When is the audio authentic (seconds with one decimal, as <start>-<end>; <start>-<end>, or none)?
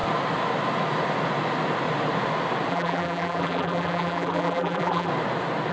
0.0-2.7; 5.1-5.7